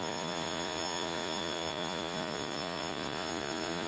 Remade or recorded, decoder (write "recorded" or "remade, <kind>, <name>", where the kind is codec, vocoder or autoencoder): remade, vocoder, Vocos